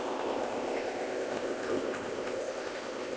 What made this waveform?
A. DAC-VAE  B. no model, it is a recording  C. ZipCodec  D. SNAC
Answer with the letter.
C